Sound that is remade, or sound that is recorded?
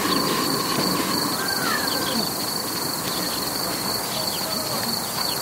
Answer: recorded